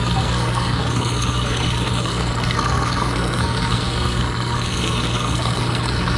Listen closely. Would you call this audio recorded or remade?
remade